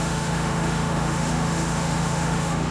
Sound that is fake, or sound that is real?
fake